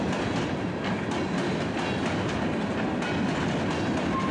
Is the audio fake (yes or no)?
no